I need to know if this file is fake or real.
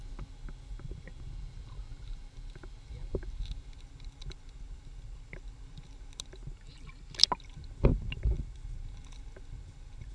real